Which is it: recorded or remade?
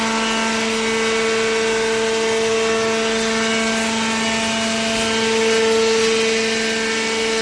recorded